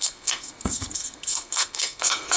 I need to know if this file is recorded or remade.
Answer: remade